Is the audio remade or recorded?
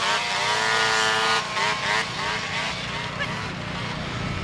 recorded